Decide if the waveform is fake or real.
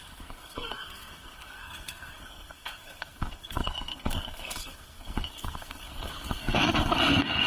fake